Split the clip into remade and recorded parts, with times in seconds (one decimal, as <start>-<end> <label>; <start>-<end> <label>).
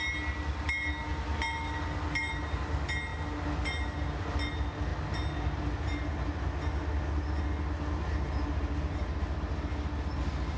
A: 0.0-10.6 recorded